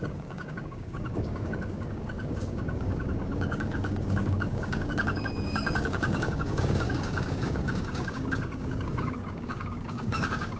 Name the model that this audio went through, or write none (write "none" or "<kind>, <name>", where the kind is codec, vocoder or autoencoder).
codec, DAC